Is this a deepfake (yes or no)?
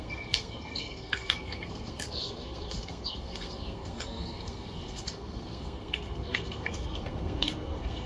yes